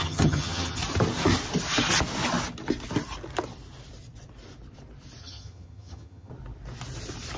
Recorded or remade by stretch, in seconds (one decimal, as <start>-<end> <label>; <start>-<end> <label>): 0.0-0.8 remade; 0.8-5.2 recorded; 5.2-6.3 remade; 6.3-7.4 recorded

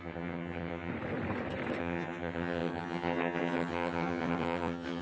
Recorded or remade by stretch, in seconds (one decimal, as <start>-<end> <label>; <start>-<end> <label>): 0.0-0.9 remade; 0.9-1.8 recorded; 1.8-5.0 remade

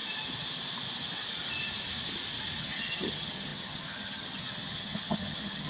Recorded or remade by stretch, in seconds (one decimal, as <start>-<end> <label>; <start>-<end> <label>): 0.0-2.6 recorded; 2.6-5.7 remade

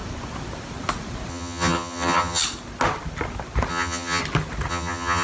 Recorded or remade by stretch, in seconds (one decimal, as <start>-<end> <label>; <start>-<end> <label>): 0.0-1.3 recorded; 1.3-2.4 remade; 2.4-3.7 recorded; 3.7-4.2 remade; 4.2-4.7 recorded; 4.7-5.2 remade